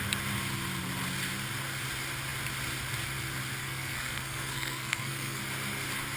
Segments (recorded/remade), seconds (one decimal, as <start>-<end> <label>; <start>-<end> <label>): 0.0-3.6 recorded; 3.6-5.4 remade; 5.4-6.2 recorded